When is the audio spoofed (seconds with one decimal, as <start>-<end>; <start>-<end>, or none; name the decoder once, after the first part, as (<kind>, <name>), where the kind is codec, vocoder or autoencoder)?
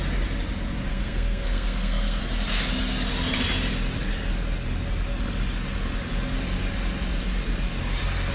0.9-2.2 (codec, SNAC)